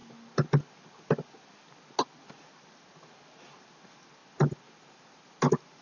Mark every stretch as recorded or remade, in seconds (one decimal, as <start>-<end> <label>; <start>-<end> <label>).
0.0-5.8 recorded